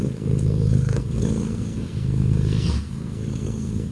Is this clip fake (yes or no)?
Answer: yes